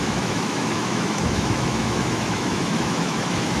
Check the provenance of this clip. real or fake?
fake